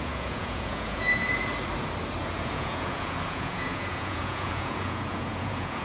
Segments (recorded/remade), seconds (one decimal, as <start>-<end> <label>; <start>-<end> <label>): 0.0-1.5 remade; 1.5-2.2 recorded; 2.2-5.8 remade